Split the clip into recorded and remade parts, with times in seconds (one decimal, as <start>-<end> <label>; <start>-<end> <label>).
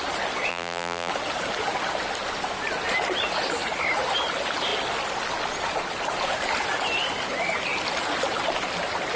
0.0-0.5 recorded; 0.5-1.1 remade; 1.1-9.2 recorded